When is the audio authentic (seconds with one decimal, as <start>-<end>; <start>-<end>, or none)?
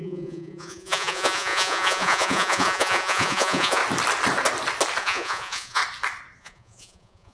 3.8-5.0; 5.8-6.4